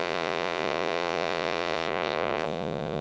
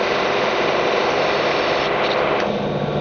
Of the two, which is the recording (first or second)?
second